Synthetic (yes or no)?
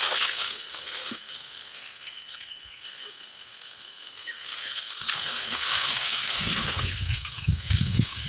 yes